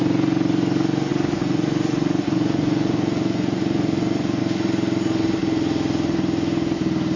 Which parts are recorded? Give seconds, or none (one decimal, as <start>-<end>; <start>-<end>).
0.0-1.1; 4.4-7.2